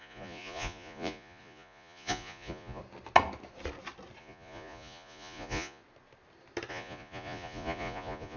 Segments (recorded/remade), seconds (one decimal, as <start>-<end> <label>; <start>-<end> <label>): 0.0-2.8 remade; 2.8-4.2 recorded; 4.2-5.8 remade; 5.8-6.7 recorded; 6.7-8.4 remade